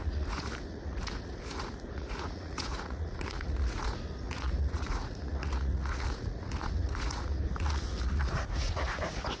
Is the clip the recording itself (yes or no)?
no